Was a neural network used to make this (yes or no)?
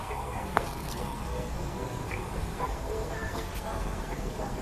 yes